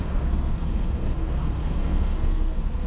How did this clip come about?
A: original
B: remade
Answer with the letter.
B